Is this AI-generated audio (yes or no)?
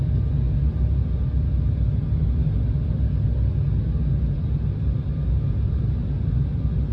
no